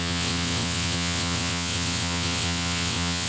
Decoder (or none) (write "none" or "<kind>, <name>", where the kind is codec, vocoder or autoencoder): vocoder, WaveNeXt